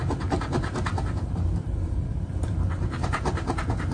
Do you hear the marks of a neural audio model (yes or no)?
no